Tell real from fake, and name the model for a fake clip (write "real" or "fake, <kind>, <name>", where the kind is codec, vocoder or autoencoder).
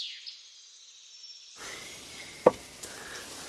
real